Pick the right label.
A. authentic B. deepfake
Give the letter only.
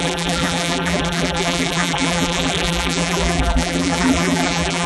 B